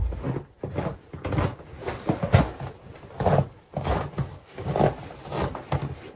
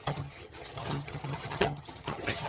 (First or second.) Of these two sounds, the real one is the first